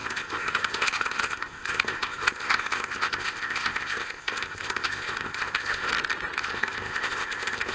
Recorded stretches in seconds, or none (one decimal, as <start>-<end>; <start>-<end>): 5.9-6.4